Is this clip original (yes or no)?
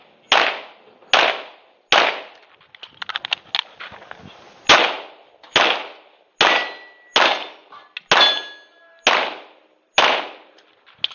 yes